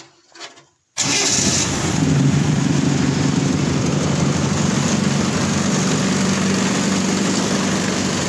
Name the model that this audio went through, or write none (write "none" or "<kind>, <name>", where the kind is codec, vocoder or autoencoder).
vocoder, BigVGAN v2